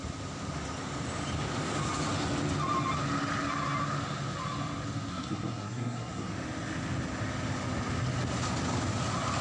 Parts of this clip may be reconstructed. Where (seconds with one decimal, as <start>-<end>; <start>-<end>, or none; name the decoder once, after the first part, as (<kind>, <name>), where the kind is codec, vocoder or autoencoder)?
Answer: 5.1-6.3 (codec, SNAC)